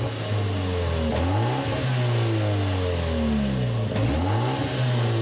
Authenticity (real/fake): real